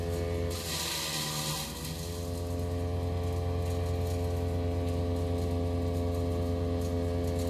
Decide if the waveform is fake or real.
real